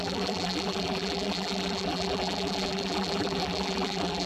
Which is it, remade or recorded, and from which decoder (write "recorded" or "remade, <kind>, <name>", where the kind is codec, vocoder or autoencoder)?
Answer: remade, vocoder, BigVGAN v2